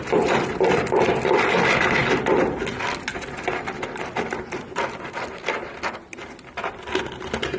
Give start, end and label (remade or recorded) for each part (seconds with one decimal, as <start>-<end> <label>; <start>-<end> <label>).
0.0-7.6 recorded